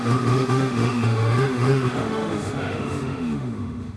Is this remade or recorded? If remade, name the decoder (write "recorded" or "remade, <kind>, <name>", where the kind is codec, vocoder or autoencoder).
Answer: remade, autoencoder, DAC-VAE